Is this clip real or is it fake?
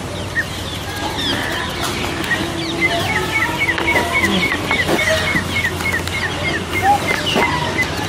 real